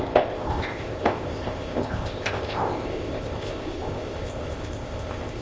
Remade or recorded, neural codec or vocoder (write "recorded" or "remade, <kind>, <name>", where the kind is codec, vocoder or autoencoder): remade, codec, ZipCodec